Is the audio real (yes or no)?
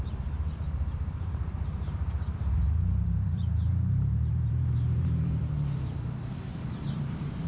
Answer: no